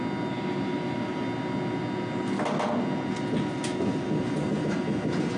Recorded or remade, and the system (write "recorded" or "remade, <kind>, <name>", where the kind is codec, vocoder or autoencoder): recorded